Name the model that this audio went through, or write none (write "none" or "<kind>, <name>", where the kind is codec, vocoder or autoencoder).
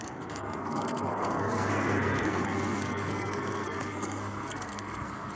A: codec, SNAC